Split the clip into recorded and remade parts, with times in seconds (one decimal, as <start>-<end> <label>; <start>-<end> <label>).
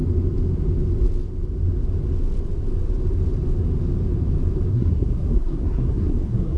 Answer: 0.0-4.7 recorded; 4.7-6.6 remade